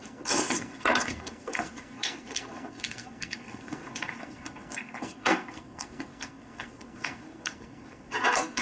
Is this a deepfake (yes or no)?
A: yes